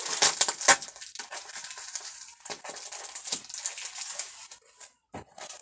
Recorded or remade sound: recorded